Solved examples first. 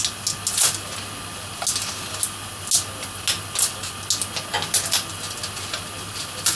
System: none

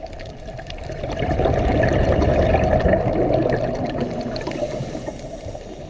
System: none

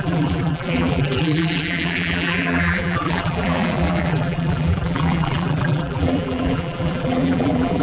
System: vocoder, BigVGAN v2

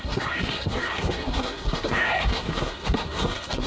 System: codec, SNAC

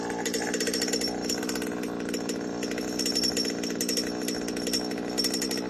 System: none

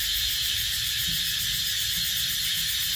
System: none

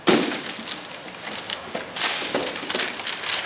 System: none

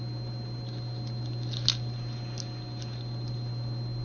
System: none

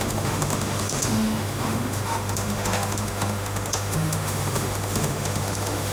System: autoencoder, DAC-VAE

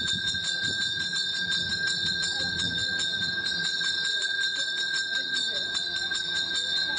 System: vocoder, Vocos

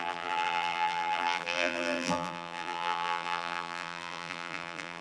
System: vocoder, BigVGAN v2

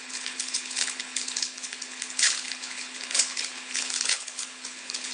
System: codec, HILCodec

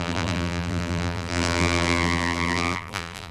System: vocoder, BigVGAN v2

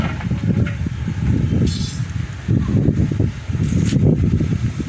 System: none